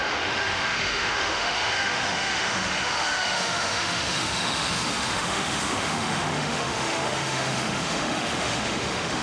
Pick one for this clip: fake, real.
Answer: fake